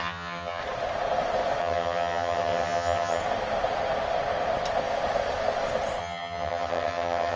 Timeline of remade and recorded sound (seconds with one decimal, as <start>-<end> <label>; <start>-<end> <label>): 0.0-0.6 remade; 0.6-1.6 recorded; 1.6-3.2 remade; 3.2-6.0 recorded; 6.0-7.4 remade